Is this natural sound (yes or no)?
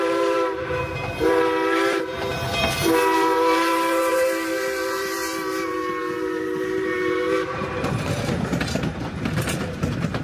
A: no